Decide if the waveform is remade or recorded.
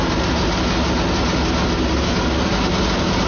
recorded